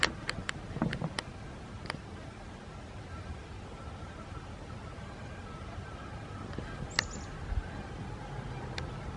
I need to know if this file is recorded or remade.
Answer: recorded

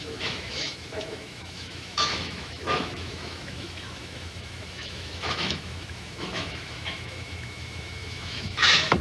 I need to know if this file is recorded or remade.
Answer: remade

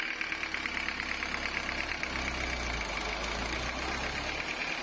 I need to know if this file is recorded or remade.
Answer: recorded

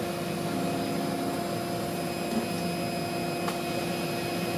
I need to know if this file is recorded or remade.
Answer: recorded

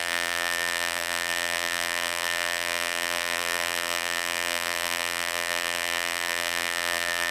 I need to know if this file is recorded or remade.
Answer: remade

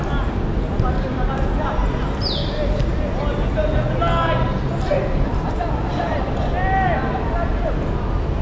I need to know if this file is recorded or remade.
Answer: recorded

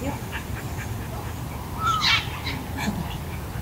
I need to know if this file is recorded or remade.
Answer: recorded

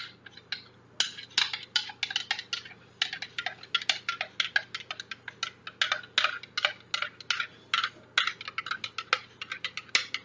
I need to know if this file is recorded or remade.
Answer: recorded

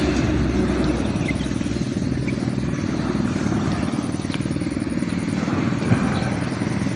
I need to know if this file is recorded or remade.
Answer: recorded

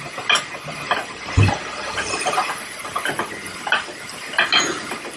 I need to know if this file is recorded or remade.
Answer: recorded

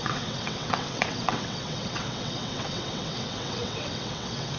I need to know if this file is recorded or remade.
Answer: remade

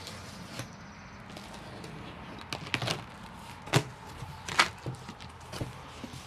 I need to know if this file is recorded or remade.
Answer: recorded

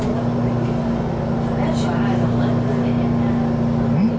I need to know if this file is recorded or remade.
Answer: recorded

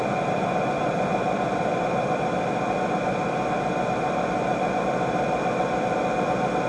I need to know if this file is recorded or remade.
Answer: recorded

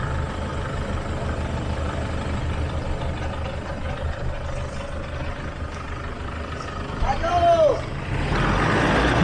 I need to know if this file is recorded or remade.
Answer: recorded